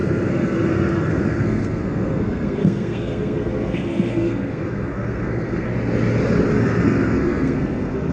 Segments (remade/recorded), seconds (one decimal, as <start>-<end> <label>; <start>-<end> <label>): 0.0-5.7 remade; 5.7-6.6 recorded; 6.6-8.1 remade